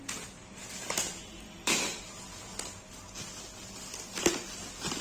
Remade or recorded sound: recorded